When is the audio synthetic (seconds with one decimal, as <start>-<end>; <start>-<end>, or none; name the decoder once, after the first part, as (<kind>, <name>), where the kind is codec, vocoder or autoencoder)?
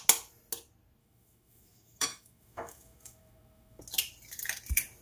1.0-3.8 (autoencoder, DAC-VAE)